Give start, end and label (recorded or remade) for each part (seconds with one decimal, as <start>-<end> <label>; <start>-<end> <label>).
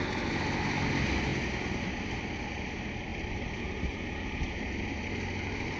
0.0-5.8 recorded